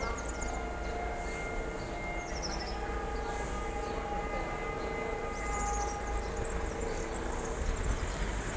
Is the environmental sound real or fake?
real